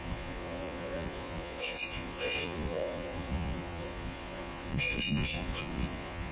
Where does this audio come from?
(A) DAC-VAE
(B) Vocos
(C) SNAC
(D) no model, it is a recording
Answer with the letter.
B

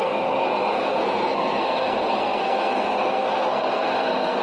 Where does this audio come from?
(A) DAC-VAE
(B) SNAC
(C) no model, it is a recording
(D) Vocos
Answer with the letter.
B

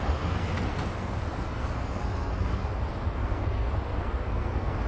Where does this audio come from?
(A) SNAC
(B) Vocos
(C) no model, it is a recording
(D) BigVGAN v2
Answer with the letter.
A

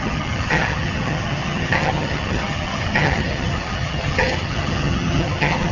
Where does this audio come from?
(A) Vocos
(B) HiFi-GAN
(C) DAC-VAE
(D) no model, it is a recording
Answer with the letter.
B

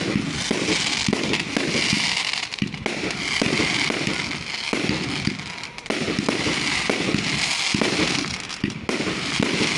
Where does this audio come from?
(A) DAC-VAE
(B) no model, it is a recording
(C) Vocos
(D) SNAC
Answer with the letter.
B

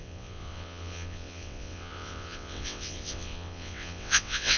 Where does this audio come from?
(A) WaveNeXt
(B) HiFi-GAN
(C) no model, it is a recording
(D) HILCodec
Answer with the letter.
A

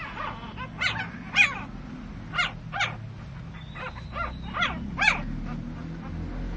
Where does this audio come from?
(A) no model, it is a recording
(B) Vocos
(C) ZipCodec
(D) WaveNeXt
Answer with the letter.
A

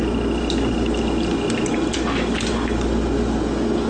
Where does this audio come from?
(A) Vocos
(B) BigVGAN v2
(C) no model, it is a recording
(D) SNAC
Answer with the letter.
C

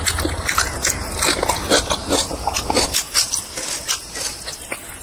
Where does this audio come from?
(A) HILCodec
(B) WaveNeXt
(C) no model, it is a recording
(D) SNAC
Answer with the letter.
C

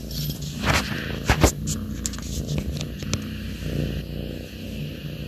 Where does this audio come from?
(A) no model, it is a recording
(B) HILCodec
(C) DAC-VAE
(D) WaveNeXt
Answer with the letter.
A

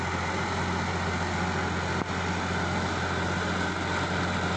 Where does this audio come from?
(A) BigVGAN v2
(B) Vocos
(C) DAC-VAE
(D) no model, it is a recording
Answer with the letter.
D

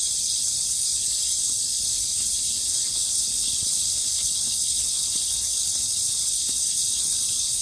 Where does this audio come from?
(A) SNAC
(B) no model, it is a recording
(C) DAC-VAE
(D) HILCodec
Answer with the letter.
D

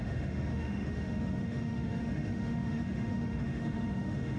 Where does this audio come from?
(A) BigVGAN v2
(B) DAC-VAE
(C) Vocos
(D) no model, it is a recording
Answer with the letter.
B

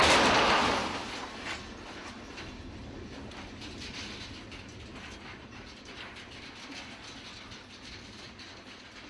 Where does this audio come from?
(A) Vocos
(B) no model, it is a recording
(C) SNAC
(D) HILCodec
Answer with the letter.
B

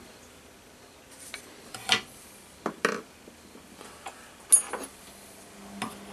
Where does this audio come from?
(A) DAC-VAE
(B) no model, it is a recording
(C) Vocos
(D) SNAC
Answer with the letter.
B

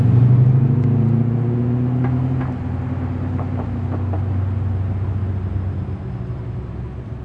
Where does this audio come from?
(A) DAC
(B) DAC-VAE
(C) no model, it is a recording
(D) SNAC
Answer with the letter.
C